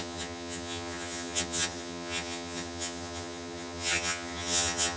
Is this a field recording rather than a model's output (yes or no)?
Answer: no